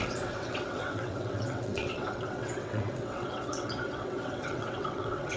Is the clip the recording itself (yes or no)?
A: no